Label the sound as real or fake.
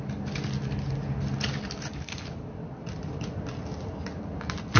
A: real